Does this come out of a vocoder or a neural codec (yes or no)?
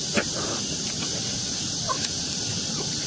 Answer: no